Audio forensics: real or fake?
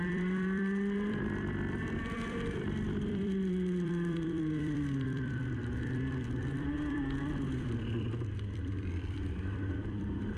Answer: fake